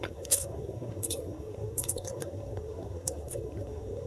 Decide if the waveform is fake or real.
fake